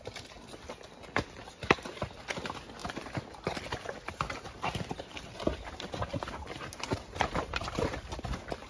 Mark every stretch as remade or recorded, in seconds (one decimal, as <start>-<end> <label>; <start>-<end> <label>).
0.0-2.8 recorded; 2.8-7.8 remade; 7.8-8.7 recorded